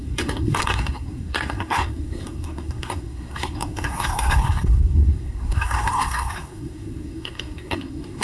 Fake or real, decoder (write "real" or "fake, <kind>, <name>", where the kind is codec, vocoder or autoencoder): fake, codec, SNAC